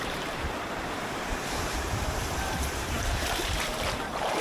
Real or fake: fake